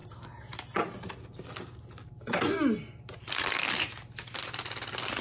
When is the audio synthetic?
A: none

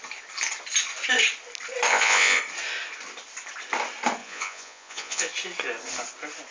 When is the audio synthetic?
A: 1.9-2.4 (vocoder, Vocos); 4.2-5.3

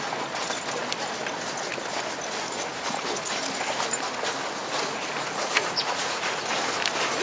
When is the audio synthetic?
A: 4.6-6.8 (vocoder, Vocos)

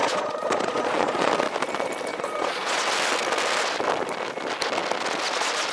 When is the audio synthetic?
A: 0.0-1.3 (vocoder, Vocos); 2.1-2.8

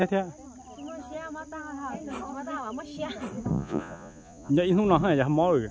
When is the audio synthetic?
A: 3.5-4.5 (vocoder, Vocos)

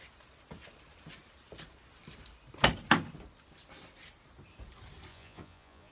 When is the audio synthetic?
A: 5.1-5.9 (vocoder, Vocos)

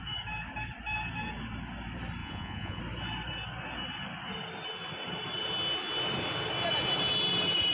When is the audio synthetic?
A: 2.2-2.8 (vocoder, Vocos)